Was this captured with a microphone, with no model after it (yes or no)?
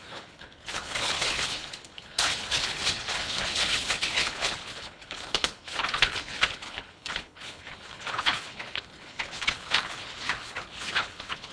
no